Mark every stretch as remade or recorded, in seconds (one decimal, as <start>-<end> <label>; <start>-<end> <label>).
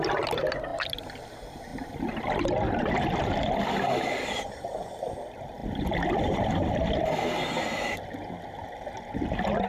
0.0-9.7 recorded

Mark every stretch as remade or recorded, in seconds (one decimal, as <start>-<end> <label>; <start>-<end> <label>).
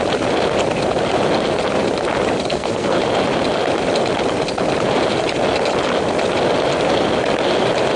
0.0-2.5 recorded; 2.5-3.0 remade; 3.0-8.0 recorded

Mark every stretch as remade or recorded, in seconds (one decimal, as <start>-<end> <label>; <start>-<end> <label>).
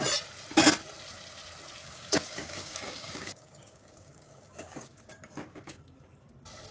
0.0-1.8 recorded; 1.8-5.8 remade; 5.8-6.7 recorded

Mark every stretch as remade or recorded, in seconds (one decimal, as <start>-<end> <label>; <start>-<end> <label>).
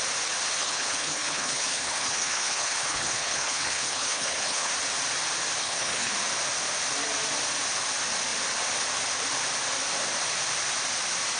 0.0-0.6 recorded; 0.6-4.7 remade; 4.7-5.6 recorded; 5.6-6.1 remade; 6.1-11.4 recorded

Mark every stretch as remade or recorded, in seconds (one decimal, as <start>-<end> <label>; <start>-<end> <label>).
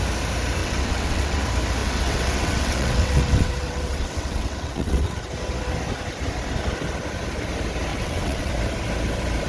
0.0-0.6 recorded; 0.6-1.4 remade; 1.4-1.8 recorded; 1.8-5.2 remade; 5.2-7.9 recorded; 7.9-8.5 remade; 8.5-9.5 recorded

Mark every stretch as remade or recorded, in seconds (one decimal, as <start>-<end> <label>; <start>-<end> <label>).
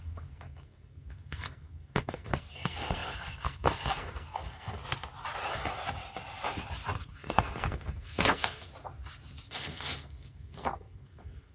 0.0-4.8 remade; 4.8-7.0 recorded; 7.0-8.7 remade; 8.7-9.5 recorded; 9.5-11.5 remade